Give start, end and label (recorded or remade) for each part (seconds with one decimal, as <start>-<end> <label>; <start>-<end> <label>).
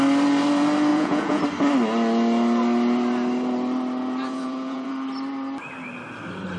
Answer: 0.0-0.9 recorded; 0.9-1.4 remade; 1.4-4.3 recorded; 4.3-4.9 remade; 4.9-6.6 recorded